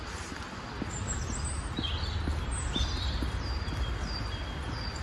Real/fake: real